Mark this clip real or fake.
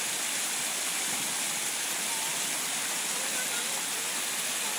real